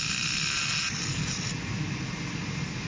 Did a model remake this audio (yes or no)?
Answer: no